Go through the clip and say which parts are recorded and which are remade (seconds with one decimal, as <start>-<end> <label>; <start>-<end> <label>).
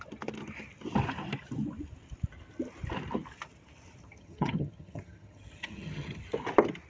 0.0-4.0 recorded; 4.0-6.2 remade; 6.2-6.9 recorded